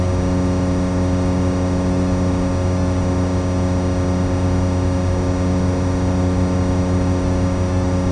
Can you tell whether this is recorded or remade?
recorded